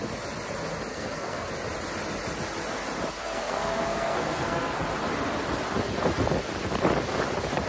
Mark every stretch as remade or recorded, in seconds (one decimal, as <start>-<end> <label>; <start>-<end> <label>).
0.0-0.9 recorded; 0.9-1.5 remade; 1.5-3.2 recorded; 3.2-4.8 remade; 4.8-7.7 recorded